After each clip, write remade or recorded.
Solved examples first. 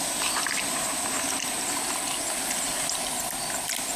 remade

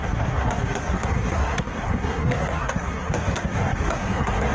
remade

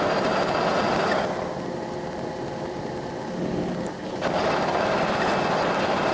recorded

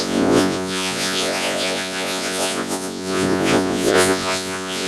remade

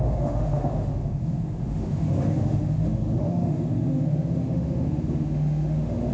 remade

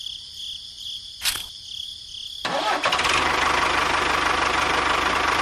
recorded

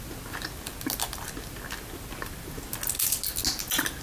recorded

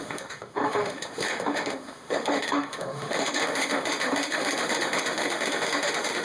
remade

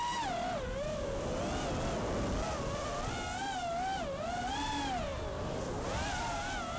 recorded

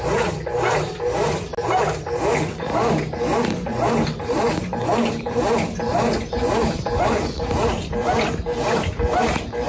recorded